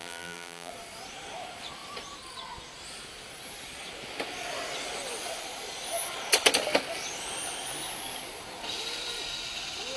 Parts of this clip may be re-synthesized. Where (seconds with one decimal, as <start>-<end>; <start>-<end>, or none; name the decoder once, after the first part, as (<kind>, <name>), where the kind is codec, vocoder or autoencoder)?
0.0-0.7 (vocoder, BigVGAN v2)